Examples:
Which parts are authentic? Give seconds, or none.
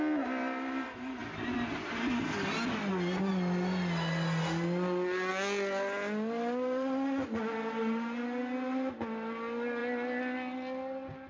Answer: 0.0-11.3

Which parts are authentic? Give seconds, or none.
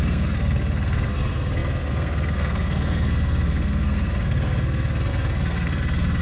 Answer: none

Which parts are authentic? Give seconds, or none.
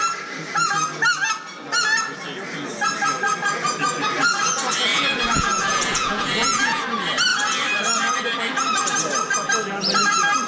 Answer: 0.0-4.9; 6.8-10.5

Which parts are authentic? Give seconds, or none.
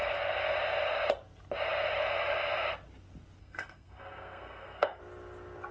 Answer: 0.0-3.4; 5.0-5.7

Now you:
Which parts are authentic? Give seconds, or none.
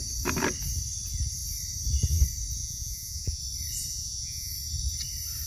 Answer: 0.0-2.6; 3.4-3.9; 4.5-5.5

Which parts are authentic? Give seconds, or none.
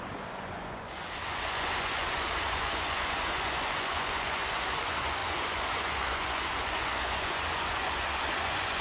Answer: none